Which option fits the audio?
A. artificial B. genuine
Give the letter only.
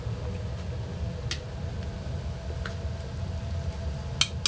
B